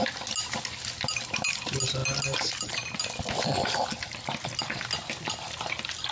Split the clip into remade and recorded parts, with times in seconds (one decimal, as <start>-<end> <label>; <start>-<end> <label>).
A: 0.0-6.1 recorded